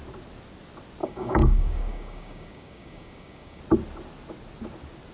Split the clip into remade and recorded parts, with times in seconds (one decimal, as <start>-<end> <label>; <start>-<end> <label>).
0.0-1.0 recorded; 1.0-3.6 remade; 3.6-5.1 recorded